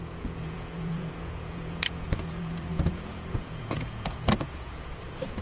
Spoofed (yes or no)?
yes